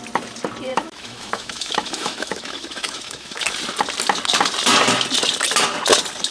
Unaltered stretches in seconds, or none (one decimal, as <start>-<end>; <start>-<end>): 0.0-0.7; 3.4-6.3